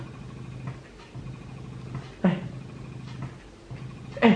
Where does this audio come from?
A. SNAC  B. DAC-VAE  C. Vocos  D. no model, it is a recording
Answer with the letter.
D